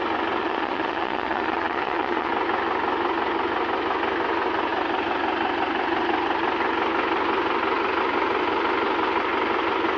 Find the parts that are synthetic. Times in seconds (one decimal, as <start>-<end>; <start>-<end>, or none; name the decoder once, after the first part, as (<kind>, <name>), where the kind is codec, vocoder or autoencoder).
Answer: 0.4-2.3 (vocoder, Vocos)